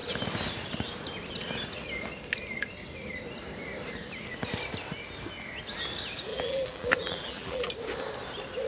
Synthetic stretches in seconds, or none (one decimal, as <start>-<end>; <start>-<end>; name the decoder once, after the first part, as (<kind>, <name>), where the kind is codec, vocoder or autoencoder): 6.3-7.7 (vocoder, BigVGAN v2)